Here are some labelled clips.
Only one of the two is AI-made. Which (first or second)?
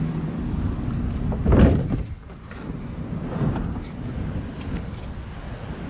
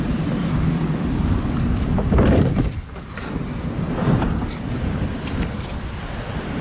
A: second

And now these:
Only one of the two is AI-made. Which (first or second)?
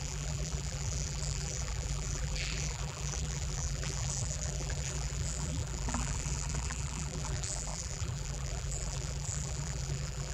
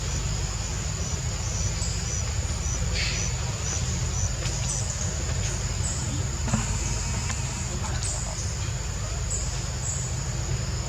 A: first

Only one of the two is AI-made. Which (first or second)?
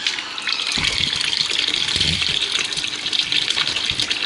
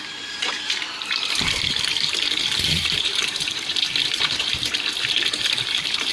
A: second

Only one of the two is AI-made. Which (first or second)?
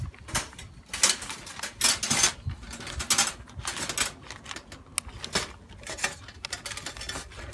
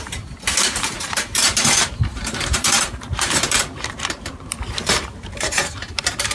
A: second